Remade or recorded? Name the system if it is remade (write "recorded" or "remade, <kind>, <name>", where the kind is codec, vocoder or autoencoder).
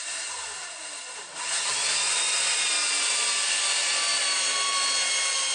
recorded